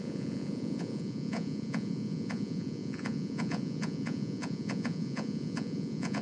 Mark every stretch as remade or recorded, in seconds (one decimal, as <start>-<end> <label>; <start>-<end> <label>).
0.0-6.2 remade